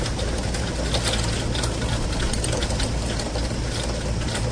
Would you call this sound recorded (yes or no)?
yes